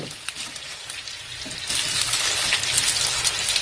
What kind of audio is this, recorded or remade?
recorded